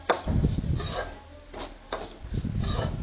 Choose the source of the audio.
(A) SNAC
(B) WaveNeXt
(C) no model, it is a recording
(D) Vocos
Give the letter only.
C